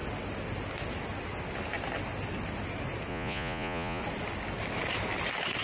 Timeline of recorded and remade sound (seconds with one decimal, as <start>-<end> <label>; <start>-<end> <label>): 0.0-3.1 recorded; 3.1-4.0 remade; 4.0-5.6 recorded